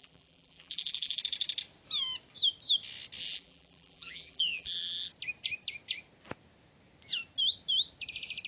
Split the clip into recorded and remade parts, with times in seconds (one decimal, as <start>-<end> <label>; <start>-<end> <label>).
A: 0.0-1.2 remade; 1.2-3.2 recorded; 3.2-5.1 remade; 5.1-8.5 recorded